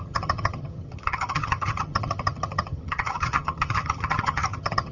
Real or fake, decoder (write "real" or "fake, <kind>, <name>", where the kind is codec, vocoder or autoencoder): fake, vocoder, HiFi-GAN